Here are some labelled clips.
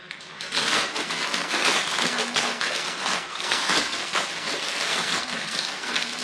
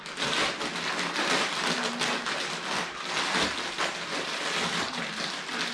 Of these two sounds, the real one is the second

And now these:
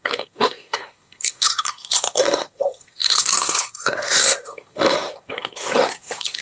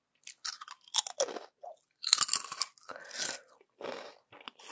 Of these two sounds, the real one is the second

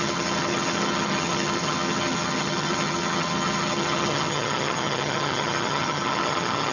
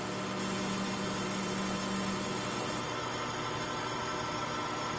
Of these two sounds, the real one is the second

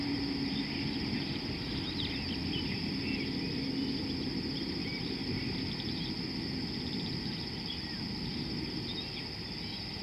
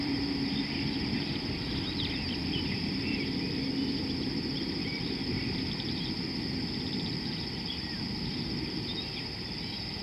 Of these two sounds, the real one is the first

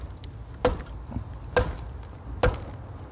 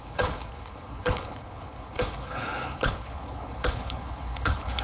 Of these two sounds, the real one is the first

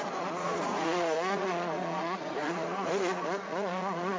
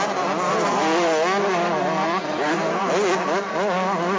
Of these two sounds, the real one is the second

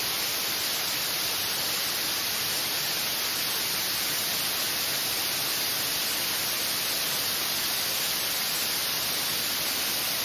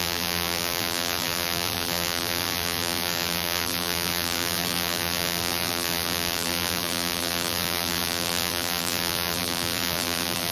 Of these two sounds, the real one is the first